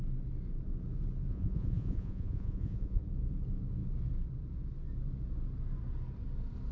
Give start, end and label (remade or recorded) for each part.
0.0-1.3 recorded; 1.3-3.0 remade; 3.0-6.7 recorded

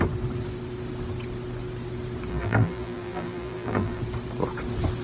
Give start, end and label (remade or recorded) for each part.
0.0-2.3 recorded; 2.3-4.0 remade; 4.0-5.0 recorded